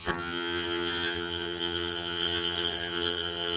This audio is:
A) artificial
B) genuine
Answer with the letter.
A